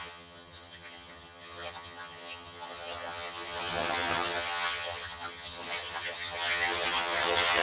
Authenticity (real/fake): fake